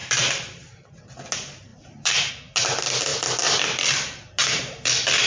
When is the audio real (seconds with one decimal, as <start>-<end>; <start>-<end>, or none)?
0.9-1.7; 2.3-5.3